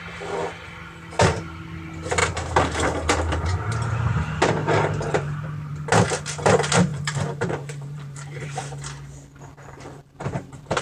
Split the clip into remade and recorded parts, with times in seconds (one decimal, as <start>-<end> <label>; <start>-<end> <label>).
0.0-2.2 recorded; 2.2-3.3 remade; 3.3-4.6 recorded; 4.6-5.7 remade; 5.7-6.9 recorded; 6.9-8.6 remade; 8.6-9.5 recorded; 9.5-10.8 remade